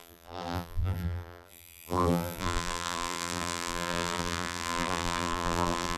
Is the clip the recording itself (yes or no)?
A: no